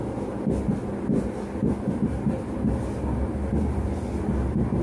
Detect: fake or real real